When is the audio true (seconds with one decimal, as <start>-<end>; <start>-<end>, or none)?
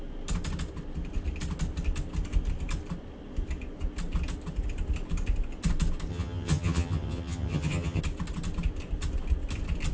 0.0-6.1; 8.0-9.9